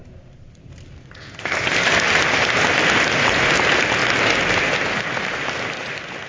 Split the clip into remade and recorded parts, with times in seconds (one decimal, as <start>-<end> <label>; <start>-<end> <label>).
0.0-6.3 recorded